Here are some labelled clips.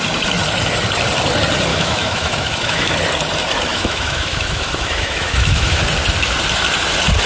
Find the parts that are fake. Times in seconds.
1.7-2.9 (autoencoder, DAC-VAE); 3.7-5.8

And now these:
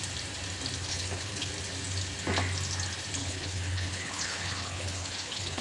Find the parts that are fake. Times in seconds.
0.8-1.5 (codec, HILCodec); 3.2-5.6

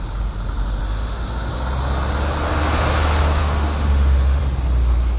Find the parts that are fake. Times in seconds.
0.8-1.5 (autoencoder, DAC-VAE); 3.4-4.4

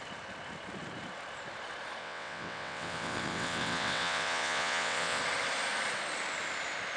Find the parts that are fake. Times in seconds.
2.0-5.2 (vocoder, WaveNeXt)

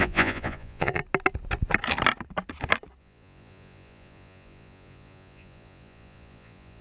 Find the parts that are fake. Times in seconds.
0.0-1.0 (vocoder, Vocos); 3.0-6.8